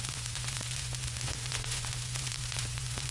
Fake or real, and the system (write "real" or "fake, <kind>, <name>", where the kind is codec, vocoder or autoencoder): fake, vocoder, Vocos